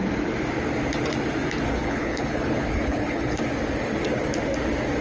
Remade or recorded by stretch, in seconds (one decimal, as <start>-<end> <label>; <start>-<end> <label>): 0.0-1.7 recorded; 1.7-3.4 remade; 3.4-5.0 recorded